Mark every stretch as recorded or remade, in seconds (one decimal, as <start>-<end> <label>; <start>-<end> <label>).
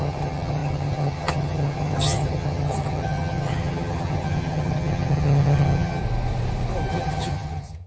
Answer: 0.0-6.0 remade; 6.0-6.9 recorded; 6.9-7.9 remade